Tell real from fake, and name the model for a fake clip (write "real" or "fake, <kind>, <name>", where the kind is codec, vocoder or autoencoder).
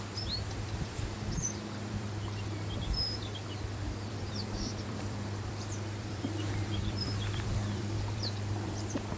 fake, vocoder, BigVGAN v2